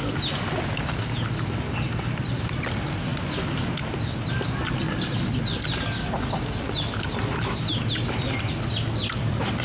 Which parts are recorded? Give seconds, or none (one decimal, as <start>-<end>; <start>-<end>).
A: 0.0-9.6